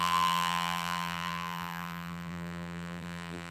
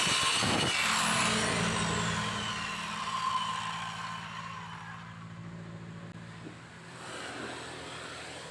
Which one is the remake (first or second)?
first